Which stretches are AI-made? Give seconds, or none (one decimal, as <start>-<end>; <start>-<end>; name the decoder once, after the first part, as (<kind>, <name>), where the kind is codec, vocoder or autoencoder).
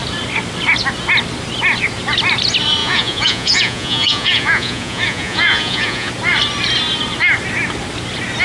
2.8-6.1 (vocoder, Vocos)